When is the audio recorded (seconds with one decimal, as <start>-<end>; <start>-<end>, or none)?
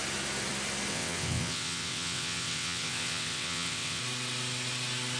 0.0-0.9; 4.0-5.2